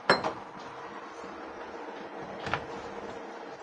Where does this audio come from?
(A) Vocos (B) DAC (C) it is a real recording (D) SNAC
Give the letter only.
C